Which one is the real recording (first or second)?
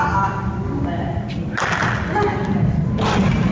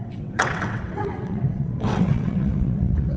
first